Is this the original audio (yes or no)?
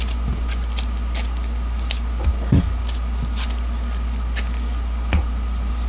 yes